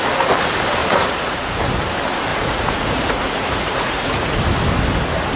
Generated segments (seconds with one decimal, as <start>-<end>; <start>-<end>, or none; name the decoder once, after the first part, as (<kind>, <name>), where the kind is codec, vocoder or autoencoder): 0.8-1.8 (vocoder, Vocos); 2.3-4.5